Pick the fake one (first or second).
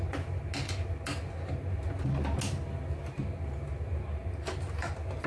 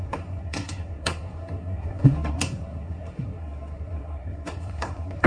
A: second